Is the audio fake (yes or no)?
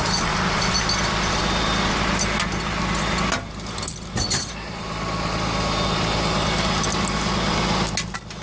no